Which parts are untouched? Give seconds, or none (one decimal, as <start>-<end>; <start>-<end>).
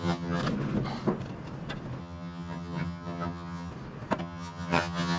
0.4-2.0; 3.7-4.2